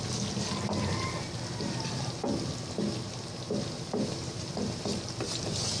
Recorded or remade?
recorded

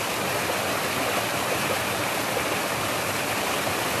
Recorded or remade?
recorded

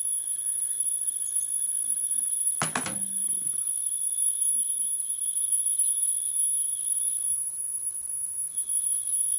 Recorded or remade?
recorded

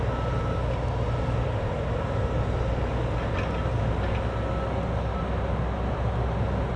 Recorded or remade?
recorded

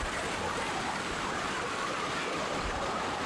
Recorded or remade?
recorded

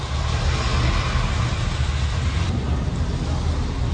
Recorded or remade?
recorded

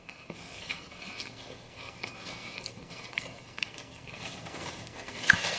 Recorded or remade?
remade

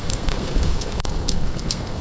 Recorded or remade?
remade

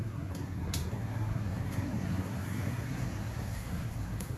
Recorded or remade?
remade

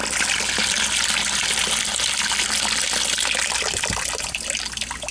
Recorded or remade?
recorded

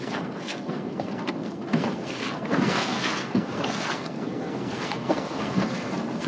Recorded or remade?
remade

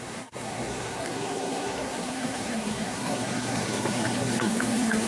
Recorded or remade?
remade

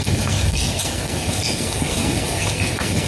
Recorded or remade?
remade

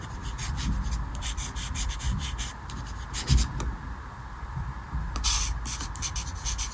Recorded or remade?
recorded